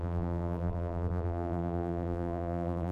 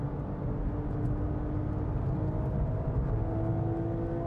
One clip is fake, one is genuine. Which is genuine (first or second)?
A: second